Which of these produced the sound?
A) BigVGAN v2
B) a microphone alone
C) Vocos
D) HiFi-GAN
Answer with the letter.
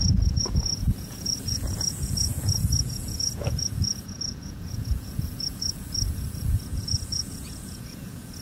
C